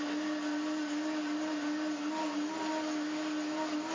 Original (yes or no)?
yes